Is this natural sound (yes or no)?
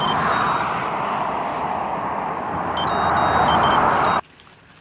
yes